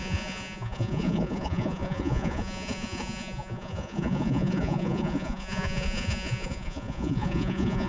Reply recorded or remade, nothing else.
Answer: remade